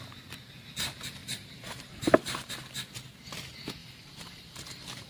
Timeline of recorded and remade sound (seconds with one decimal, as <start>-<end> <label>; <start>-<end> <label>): 0.0-1.2 recorded; 1.2-2.5 remade; 2.5-3.8 recorded; 3.8-5.1 remade